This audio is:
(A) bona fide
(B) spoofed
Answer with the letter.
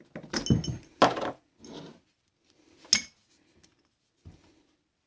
A